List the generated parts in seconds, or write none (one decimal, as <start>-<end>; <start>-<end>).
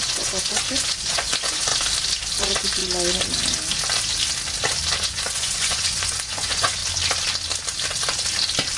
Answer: 0.0-1.7; 2.4-2.8; 5.0-6.8